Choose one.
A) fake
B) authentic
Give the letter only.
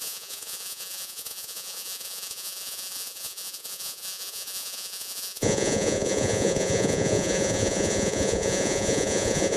A